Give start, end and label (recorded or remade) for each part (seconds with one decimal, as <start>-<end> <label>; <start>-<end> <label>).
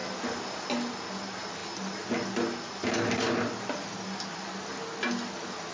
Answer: 0.0-5.7 recorded